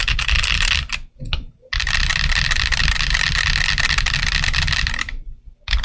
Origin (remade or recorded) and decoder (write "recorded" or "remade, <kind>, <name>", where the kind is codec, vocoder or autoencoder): recorded